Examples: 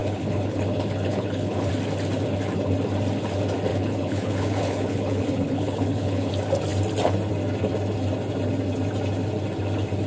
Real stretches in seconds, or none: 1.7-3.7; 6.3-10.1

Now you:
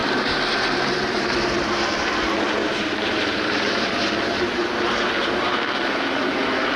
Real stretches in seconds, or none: 1.9-2.6; 4.0-6.8

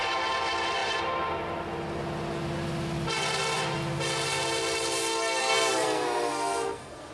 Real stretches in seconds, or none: 0.0-5.4

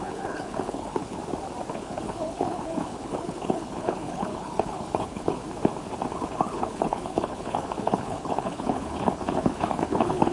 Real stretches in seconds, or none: 1.2-1.7; 5.4-6.1

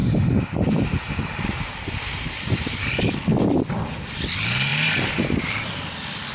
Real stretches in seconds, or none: 3.7-4.7

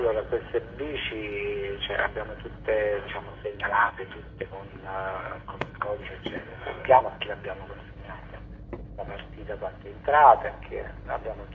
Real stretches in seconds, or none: 0.0-3.3; 4.5-5.2; 6.0-6.5; 7.0-11.5

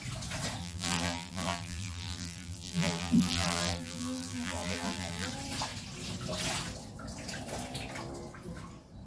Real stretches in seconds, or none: 0.0-0.6; 5.3-9.1

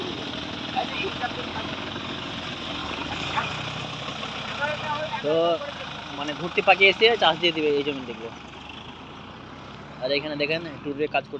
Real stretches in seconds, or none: 0.0-1.5; 2.3-2.8; 3.5-11.4